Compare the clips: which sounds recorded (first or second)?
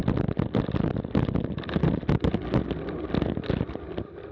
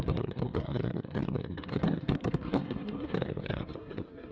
first